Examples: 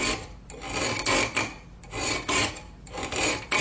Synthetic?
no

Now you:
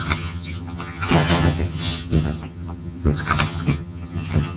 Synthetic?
yes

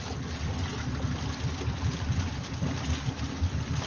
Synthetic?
no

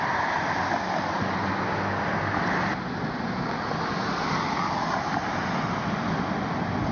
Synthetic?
no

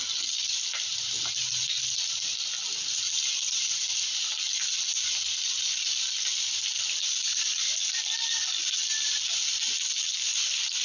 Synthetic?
no